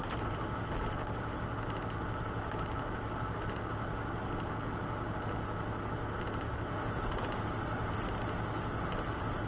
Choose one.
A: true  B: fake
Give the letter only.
A